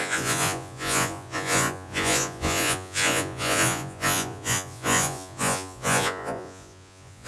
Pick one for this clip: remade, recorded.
remade